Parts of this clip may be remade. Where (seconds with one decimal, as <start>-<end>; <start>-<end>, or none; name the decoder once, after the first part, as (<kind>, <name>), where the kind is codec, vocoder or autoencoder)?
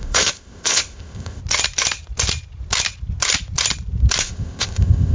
0.0-1.4 (codec, ZipCodec); 4.2-5.1